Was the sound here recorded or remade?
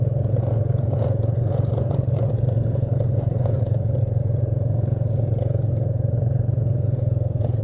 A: remade